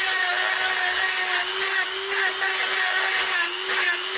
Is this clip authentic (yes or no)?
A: yes